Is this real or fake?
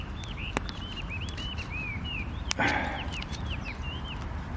fake